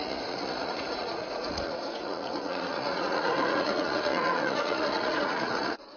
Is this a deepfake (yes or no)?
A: yes